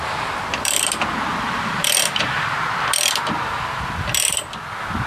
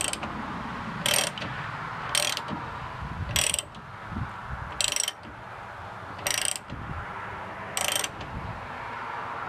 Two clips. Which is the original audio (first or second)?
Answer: second